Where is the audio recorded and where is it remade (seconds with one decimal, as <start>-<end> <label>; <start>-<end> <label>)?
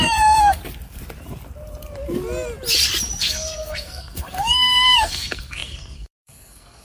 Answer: 0.0-0.6 remade; 0.6-3.2 recorded; 3.2-6.8 remade